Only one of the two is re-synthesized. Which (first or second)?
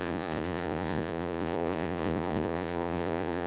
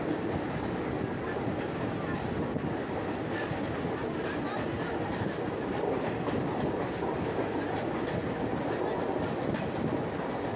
first